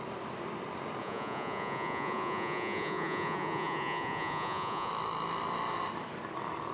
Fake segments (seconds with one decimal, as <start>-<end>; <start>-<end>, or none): 1.0-4.9